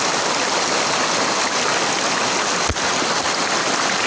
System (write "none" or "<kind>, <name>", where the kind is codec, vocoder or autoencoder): none